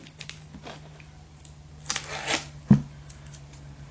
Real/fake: real